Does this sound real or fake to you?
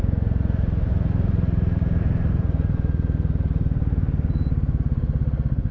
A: real